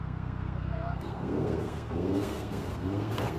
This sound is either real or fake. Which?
fake